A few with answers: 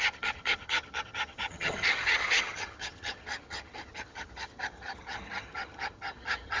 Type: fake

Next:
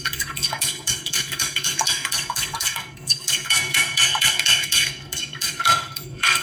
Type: fake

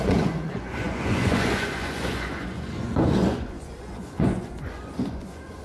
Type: fake